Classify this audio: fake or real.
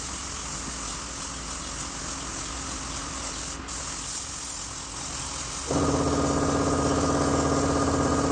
real